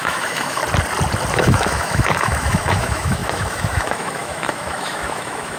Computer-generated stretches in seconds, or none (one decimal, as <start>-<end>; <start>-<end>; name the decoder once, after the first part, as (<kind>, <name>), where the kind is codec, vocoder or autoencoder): 0.0-0.6 (autoencoder, DAC-VAE); 1.3-5.6

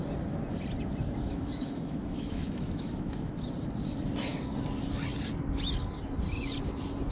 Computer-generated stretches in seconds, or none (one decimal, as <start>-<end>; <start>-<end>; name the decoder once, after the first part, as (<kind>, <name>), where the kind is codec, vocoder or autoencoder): 1.3-3.3 (autoencoder, DAC-VAE)

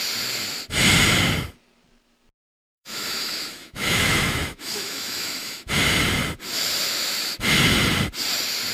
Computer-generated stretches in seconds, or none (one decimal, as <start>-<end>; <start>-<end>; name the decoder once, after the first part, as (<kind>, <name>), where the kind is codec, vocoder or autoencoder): 2.5-5.7 (autoencoder, DAC-VAE)

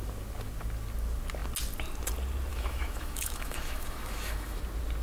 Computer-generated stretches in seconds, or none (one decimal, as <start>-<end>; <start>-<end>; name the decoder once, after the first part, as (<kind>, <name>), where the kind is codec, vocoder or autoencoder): 2.5-4.6 (autoencoder, DAC-VAE)